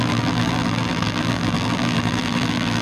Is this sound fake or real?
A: fake